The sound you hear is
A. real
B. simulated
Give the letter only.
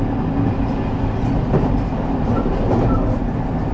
A